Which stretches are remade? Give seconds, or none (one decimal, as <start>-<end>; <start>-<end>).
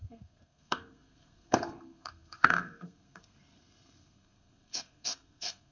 0.0-5.7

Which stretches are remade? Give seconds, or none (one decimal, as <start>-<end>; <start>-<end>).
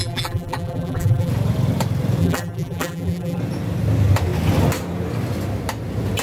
0.0-1.3; 2.2-3.4